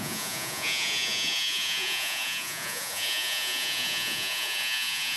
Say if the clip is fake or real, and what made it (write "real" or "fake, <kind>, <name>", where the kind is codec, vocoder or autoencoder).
fake, vocoder, Vocos